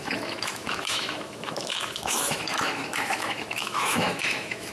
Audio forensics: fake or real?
fake